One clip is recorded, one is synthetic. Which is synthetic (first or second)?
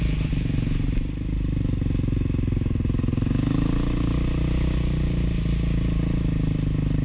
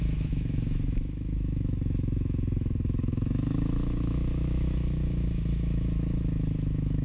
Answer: second